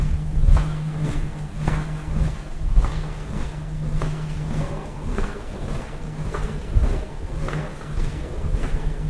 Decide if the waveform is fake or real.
fake